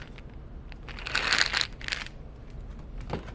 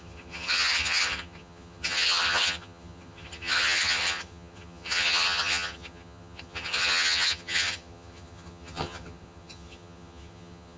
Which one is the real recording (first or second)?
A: first